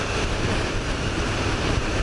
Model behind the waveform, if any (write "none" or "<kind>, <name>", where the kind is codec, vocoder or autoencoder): vocoder, BigVGAN v2